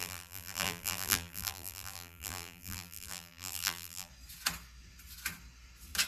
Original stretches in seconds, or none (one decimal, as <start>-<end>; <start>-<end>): 4.1-6.1